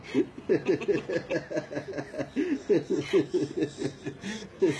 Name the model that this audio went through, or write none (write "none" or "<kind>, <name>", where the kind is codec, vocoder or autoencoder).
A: none